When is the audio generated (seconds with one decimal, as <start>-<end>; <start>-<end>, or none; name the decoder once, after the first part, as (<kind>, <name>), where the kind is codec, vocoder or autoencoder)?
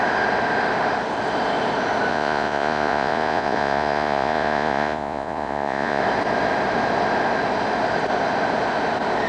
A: 2.1-6.0 (vocoder, Vocos)